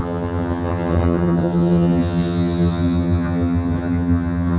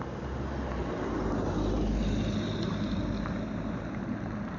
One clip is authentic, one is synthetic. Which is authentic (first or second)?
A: second